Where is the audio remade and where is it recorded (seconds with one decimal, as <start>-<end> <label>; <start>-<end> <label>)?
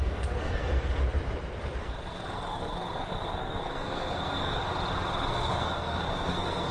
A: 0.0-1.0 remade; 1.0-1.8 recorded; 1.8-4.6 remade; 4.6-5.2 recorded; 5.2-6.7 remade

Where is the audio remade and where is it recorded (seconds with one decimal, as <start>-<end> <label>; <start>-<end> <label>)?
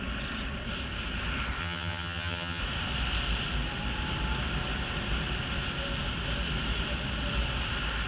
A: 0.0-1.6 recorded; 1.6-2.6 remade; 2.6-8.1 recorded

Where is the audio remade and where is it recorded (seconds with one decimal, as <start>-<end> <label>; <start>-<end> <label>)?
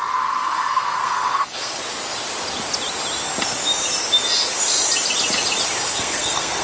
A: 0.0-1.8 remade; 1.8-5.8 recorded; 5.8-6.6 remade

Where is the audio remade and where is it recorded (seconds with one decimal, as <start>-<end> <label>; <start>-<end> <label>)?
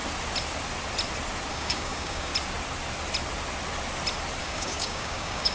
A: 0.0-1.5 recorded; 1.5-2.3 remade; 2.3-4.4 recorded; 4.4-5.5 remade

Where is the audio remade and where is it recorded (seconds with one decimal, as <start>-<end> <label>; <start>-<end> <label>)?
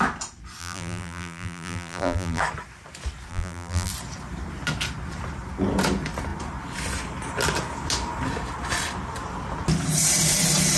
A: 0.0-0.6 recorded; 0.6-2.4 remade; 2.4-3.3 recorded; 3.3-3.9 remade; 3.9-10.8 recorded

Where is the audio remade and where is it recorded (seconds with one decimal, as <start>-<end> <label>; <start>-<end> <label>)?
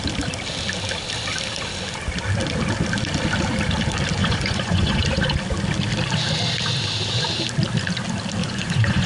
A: 0.0-4.2 recorded; 4.2-5.0 remade; 5.0-8.4 recorded; 8.4-9.1 remade